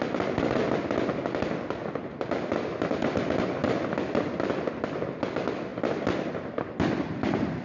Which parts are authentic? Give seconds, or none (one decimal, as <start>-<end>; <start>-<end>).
0.0-7.6